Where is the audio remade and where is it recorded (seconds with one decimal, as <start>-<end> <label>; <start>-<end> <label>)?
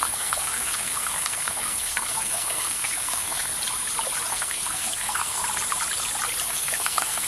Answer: 0.0-3.5 remade; 3.5-4.3 recorded; 4.3-5.4 remade; 5.4-6.5 recorded; 6.5-7.3 remade